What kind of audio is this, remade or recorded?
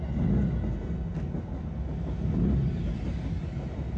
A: recorded